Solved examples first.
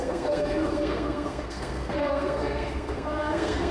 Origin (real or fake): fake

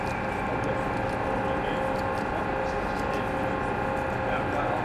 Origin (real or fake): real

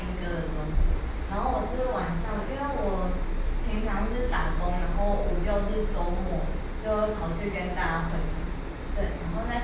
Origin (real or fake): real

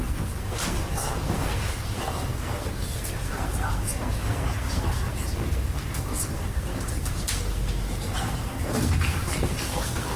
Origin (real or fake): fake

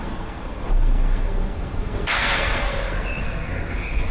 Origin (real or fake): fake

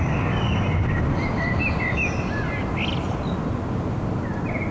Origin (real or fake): real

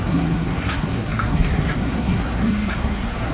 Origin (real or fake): fake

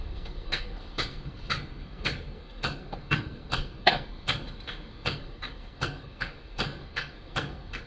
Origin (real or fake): fake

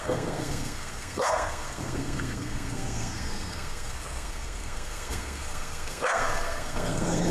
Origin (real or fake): fake